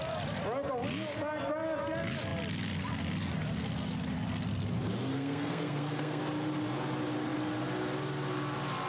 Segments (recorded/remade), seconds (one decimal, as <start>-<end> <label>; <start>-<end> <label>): 0.0-5.1 recorded; 5.1-6.2 remade; 6.2-8.9 recorded